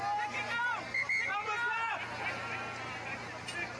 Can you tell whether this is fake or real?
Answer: real